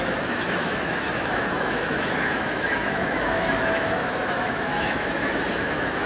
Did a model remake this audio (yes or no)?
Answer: yes